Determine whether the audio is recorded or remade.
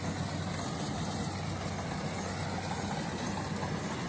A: recorded